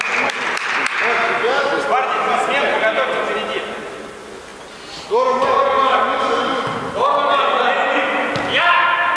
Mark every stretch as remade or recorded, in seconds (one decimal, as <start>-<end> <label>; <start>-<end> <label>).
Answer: 0.0-9.2 recorded